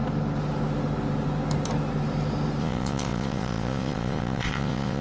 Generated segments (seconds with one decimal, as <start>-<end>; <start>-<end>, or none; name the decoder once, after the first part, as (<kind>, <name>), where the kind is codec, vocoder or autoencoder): 2.6-5.0 (vocoder, Vocos)